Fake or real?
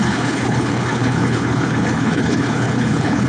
fake